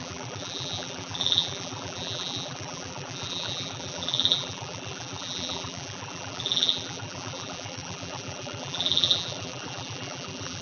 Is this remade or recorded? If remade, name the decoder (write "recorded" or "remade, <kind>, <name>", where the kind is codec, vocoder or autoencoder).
remade, vocoder, BigVGAN v2